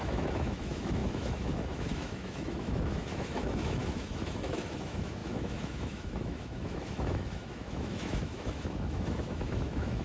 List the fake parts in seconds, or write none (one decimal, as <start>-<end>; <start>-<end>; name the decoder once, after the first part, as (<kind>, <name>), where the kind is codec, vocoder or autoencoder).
0.0-10.0 (autoencoder, DAC-VAE)